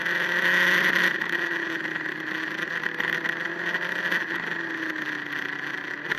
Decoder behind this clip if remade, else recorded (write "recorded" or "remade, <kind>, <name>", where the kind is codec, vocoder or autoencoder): recorded